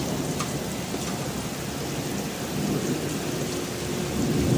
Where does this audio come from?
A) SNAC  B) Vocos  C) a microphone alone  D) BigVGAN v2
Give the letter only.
C